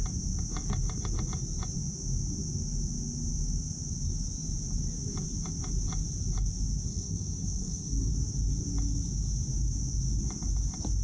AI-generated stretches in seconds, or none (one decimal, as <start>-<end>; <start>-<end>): 6.9-8.1